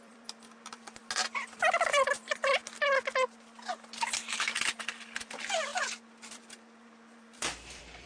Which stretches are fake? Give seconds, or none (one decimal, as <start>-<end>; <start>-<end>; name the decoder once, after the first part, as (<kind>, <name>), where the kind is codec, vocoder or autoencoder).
0.0-1.0 (vocoder, BigVGAN v2); 1.5-2.6; 4.8-5.7; 6.3-8.1